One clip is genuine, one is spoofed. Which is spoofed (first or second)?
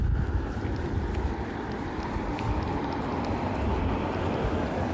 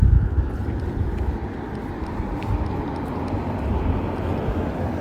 first